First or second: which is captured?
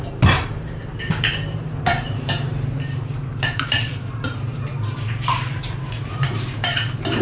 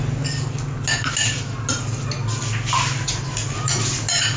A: second